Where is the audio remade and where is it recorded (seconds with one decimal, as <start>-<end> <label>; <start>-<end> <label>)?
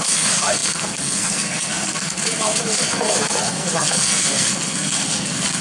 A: 0.0-5.6 remade